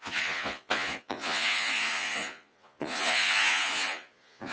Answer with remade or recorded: remade